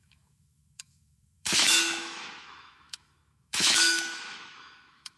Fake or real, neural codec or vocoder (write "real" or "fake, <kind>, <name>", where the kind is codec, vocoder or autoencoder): fake, autoencoder, DAC-VAE